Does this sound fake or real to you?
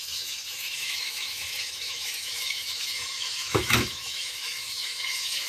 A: fake